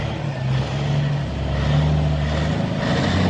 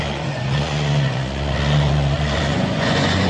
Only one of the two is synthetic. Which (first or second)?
second